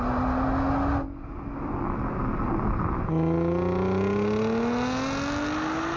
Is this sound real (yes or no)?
yes